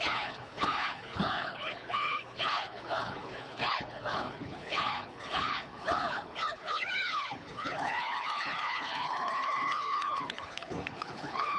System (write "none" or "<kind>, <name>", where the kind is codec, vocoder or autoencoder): codec, HILCodec